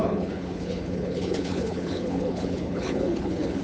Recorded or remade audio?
remade